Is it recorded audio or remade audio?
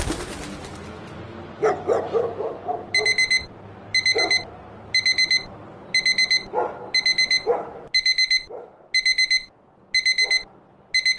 recorded